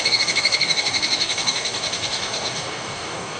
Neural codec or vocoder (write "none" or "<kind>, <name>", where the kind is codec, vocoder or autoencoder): codec, DAC